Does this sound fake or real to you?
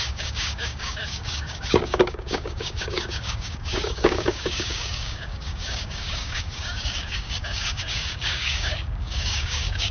fake